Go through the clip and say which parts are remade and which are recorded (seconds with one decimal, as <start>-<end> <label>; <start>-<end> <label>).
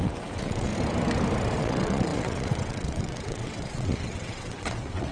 0.0-0.7 remade; 0.7-1.6 recorded; 1.6-5.1 remade